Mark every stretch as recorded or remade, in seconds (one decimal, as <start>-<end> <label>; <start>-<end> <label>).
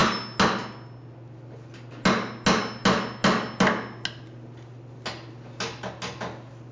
0.0-6.7 recorded